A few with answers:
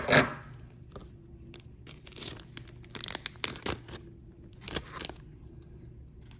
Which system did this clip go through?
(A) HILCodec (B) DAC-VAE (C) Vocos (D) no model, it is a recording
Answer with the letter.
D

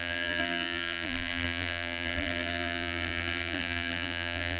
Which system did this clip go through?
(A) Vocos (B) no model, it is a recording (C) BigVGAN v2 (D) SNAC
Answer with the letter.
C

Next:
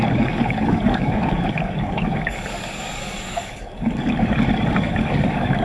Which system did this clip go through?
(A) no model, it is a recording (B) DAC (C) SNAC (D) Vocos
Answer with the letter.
B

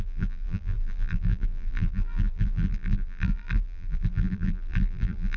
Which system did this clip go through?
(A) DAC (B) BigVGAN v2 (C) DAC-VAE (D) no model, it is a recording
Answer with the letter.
B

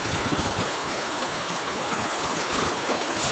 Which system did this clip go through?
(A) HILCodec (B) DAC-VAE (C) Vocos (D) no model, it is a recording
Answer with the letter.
A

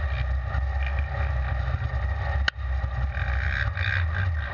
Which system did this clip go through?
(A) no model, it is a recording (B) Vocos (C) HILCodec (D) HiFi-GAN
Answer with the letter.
A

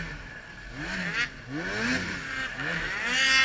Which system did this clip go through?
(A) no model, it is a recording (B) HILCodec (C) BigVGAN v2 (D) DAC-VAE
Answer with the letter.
A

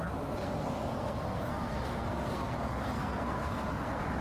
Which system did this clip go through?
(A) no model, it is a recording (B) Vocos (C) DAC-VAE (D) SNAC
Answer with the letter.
D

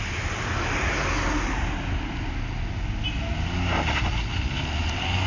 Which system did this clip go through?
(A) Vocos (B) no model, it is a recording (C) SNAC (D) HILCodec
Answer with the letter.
B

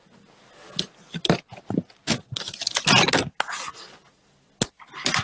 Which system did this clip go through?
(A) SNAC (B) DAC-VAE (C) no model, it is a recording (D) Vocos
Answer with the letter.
C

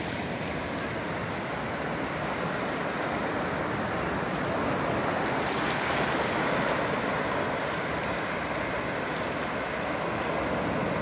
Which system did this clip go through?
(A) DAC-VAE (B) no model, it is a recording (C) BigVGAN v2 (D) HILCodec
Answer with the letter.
B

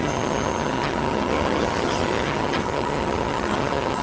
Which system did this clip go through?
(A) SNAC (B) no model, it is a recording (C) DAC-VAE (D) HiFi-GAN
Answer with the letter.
D